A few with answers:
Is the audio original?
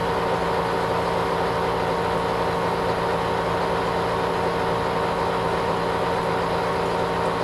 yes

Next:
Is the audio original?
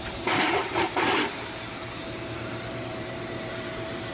no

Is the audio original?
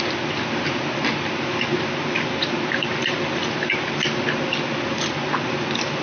yes